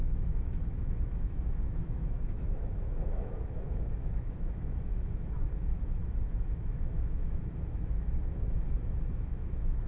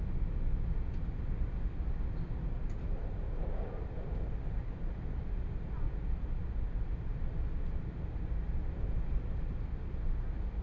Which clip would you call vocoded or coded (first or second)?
first